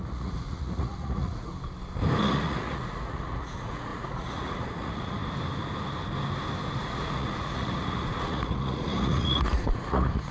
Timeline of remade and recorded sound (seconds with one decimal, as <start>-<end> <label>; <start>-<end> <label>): 0.0-1.5 remade; 1.5-2.2 recorded; 2.2-5.2 remade; 5.2-6.8 recorded; 6.8-10.3 remade